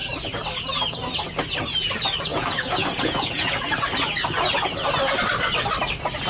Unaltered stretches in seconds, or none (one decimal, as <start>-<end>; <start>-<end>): 0.0-2.3; 3.6-6.3